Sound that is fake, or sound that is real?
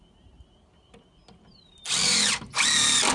real